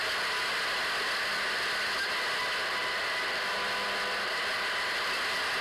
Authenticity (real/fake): real